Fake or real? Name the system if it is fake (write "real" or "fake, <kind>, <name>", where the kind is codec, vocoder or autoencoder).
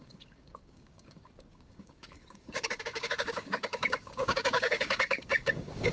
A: fake, codec, DAC